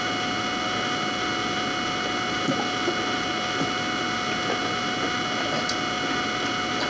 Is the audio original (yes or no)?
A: yes